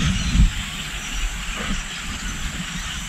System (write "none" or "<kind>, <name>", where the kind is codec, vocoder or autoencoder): none